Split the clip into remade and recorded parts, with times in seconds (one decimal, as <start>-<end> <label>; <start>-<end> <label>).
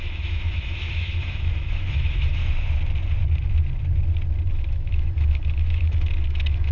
0.0-2.4 remade; 2.4-4.5 recorded; 4.5-6.7 remade